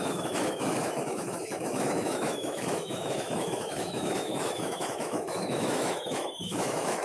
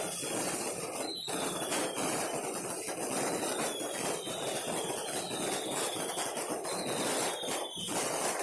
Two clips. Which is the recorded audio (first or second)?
second